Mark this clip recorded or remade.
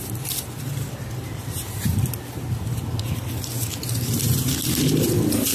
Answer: recorded